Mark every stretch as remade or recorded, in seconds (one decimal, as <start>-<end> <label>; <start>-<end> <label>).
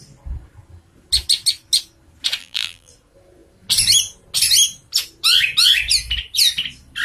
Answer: 0.0-2.4 recorded; 2.4-2.9 remade; 2.9-7.0 recorded